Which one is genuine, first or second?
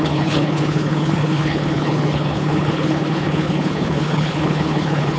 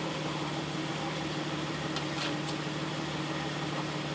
second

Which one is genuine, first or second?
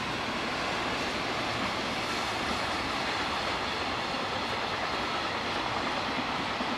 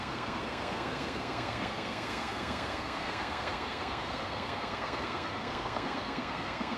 first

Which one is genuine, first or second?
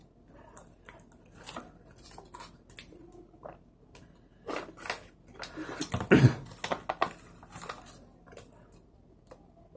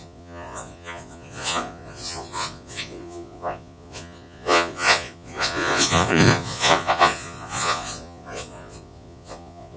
first